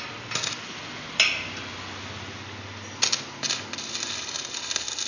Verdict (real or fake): real